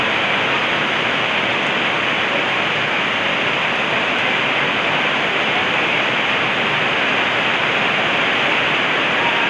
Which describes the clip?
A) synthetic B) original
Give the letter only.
B